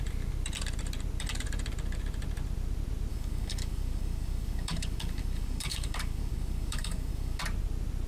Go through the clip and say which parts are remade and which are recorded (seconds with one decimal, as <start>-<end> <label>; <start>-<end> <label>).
0.0-3.1 recorded; 3.1-7.4 remade; 7.4-8.1 recorded